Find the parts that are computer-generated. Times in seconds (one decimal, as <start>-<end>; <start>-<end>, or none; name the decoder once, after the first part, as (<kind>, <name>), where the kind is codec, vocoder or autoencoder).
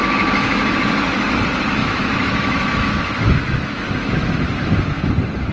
0.0-0.7 (autoencoder, DAC-VAE); 1.8-5.1